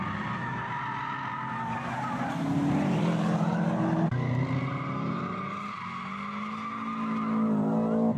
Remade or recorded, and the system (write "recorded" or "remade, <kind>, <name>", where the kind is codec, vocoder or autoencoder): recorded